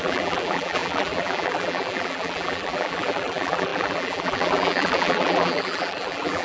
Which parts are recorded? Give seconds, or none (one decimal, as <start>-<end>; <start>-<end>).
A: none